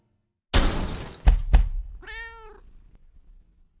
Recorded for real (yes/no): yes